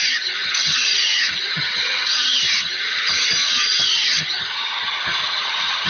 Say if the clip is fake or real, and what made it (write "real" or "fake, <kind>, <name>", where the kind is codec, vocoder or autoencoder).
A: fake, vocoder, HiFi-GAN